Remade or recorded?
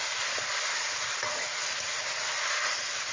recorded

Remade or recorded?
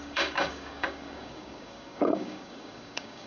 remade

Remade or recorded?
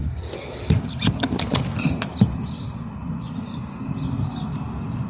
recorded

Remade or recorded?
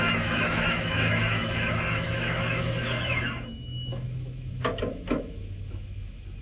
remade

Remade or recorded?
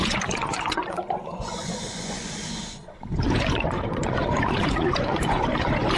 remade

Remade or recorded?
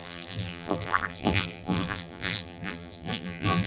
remade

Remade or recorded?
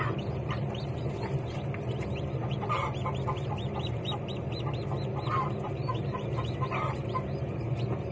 remade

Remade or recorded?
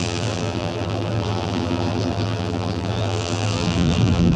remade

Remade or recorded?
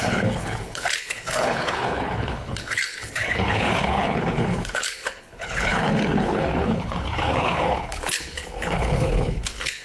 remade